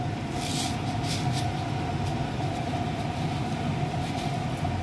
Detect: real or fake real